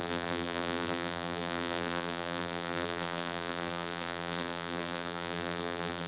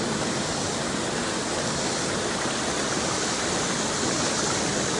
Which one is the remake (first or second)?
first